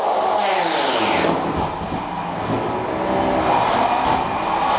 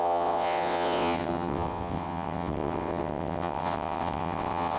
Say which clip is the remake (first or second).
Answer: second